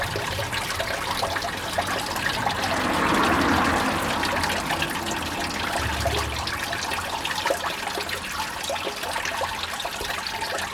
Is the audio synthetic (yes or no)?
no